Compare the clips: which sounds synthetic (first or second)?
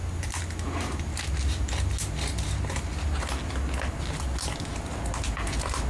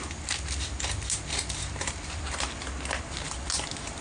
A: second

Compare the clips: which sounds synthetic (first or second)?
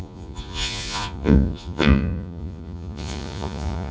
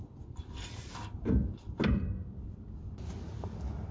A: first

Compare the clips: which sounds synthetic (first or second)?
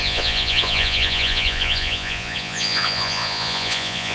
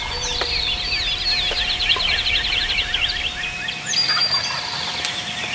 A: first